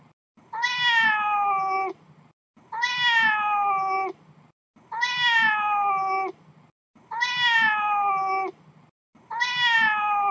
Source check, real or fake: real